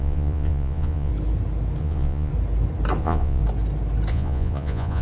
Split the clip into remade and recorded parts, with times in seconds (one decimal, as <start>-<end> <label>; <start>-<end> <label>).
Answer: 0.0-1.1 remade; 1.1-1.8 recorded; 1.8-2.3 remade; 2.3-3.0 recorded; 3.0-3.4 remade; 3.4-4.1 recorded; 4.1-5.0 remade

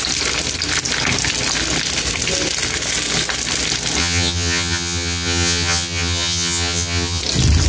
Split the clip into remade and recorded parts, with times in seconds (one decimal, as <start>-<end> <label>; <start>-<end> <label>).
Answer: 0.0-4.0 recorded; 4.0-7.2 remade; 7.2-7.7 recorded

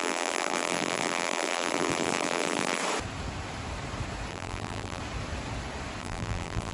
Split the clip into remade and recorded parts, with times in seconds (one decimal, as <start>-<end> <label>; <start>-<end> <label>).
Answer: 0.0-2.8 remade; 2.8-4.3 recorded; 4.3-5.0 remade; 5.0-6.0 recorded; 6.0-6.7 remade

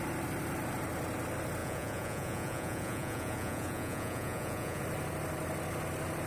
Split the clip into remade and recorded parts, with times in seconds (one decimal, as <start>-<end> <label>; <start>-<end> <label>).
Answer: 0.0-1.6 recorded; 1.6-4.8 remade; 4.8-6.3 recorded

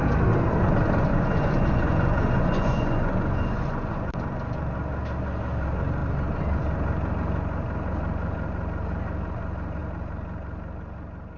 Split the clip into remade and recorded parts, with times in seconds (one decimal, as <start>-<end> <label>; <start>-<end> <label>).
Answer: 0.0-1.1 recorded; 1.1-4.1 remade; 4.1-11.4 recorded

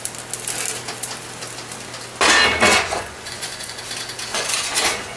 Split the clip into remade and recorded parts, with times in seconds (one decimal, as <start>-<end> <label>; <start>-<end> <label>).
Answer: 0.0-2.7 recorded; 2.7-3.8 remade; 3.8-4.3 recorded; 4.3-5.2 remade

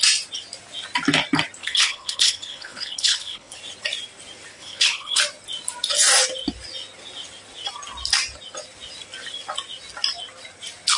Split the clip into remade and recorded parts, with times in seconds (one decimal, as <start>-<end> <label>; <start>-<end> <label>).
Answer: 0.0-1.6 recorded; 1.6-3.6 remade; 3.6-4.5 recorded; 4.5-5.2 remade; 5.2-11.0 recorded

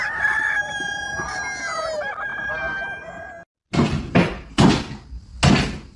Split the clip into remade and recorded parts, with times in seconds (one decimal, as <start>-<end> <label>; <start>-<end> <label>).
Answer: 0.0-6.0 recorded